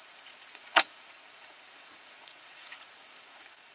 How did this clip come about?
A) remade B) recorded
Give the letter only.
A